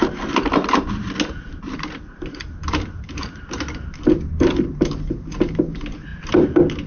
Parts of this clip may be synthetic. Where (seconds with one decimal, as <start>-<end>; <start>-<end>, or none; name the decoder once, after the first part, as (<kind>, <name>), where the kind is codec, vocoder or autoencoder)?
none